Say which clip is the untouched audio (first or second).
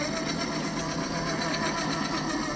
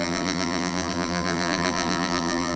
first